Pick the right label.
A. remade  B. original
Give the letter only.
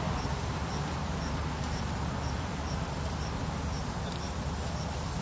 A